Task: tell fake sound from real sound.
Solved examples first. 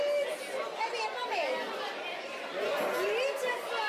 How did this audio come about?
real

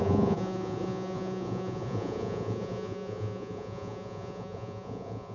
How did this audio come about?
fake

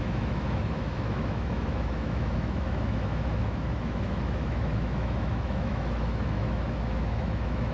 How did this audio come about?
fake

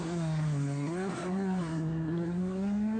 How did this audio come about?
fake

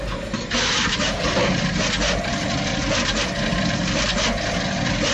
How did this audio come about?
real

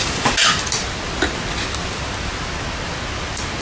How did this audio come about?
real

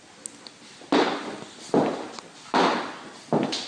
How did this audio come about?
real